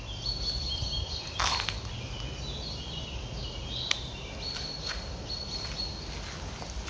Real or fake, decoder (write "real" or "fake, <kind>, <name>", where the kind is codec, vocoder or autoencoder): real